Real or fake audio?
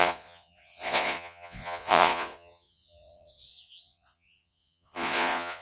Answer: fake